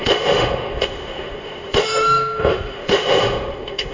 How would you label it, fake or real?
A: fake